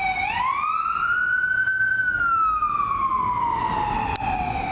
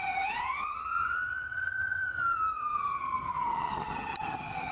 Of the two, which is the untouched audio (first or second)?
first